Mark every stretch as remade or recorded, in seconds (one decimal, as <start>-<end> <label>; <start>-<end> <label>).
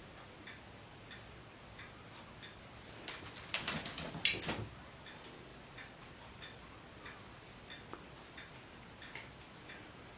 0.0-10.2 recorded